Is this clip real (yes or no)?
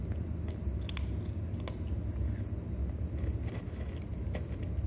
yes